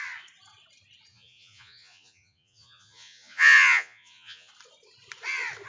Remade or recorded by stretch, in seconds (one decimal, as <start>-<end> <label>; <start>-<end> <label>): 0.0-1.1 recorded; 1.1-4.5 remade; 4.5-5.7 recorded

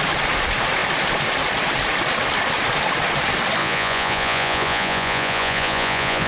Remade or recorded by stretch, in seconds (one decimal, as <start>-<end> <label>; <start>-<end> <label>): 0.0-3.6 recorded; 3.6-6.3 remade

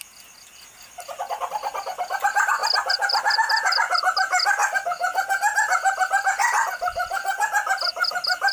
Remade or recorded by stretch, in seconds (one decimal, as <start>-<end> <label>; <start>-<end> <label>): 0.0-2.6 recorded; 2.6-3.2 remade; 3.2-8.5 recorded

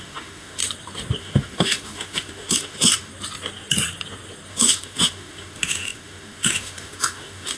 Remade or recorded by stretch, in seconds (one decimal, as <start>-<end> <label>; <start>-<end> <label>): 0.0-0.6 remade; 0.6-1.2 recorded; 1.2-3.1 remade; 3.1-4.5 recorded; 4.5-7.6 remade

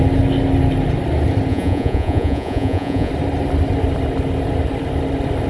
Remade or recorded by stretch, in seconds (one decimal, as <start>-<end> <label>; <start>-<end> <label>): 0.0-1.5 recorded; 1.5-3.1 remade; 3.1-5.5 recorded